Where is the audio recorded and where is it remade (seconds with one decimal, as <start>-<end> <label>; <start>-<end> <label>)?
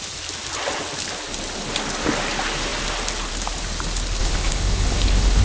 0.0-4.2 recorded; 4.2-5.4 remade